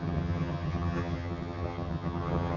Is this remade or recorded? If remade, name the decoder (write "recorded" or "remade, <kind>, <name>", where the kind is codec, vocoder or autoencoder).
remade, vocoder, HiFi-GAN